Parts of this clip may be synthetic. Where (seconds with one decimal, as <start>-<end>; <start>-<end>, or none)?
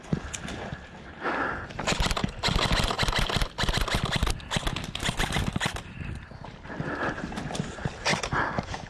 none